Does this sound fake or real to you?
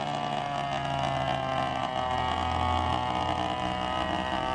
real